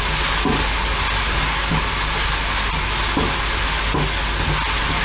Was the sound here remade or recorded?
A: recorded